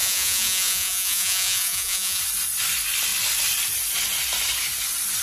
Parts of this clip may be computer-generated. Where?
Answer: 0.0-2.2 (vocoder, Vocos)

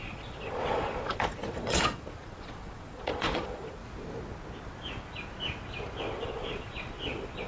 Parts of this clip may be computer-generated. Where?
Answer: 0.0-3.8 (vocoder, Vocos); 6.0-7.5

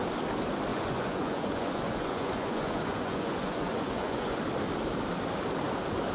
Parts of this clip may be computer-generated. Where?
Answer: 0.7-4.4 (vocoder, Vocos)

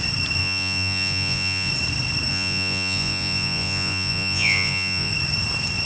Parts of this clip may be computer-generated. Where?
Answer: 0.4-1.7 (vocoder, Vocos); 2.3-5.1

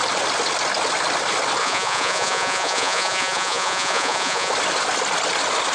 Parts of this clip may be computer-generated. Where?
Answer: 1.6-4.5 (vocoder, Vocos)